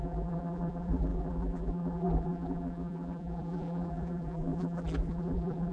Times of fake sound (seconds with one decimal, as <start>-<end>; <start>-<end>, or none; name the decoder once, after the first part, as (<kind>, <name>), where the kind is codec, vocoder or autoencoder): 0.0-5.7 (vocoder, BigVGAN v2)